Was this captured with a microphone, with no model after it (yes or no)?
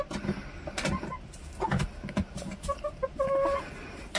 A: yes